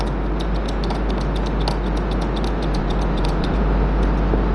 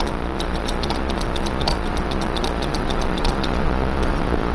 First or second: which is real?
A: first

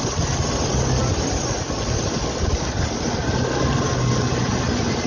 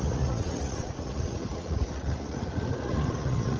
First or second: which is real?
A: first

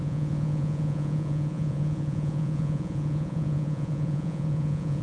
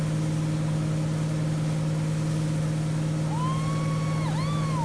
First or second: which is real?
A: second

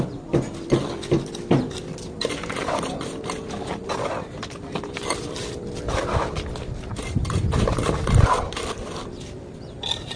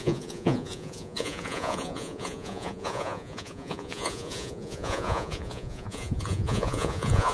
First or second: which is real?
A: first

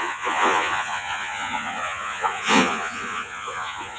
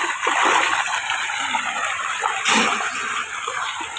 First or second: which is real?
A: second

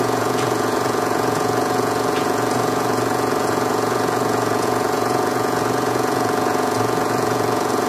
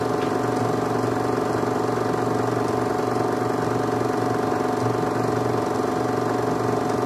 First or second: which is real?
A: second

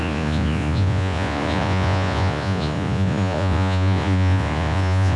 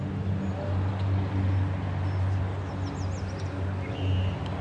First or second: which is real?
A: second